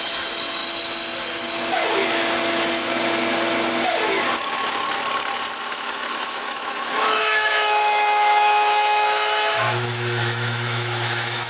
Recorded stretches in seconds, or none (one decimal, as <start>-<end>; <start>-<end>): 0.6-5.6